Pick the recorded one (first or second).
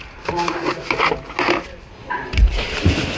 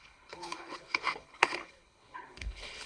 first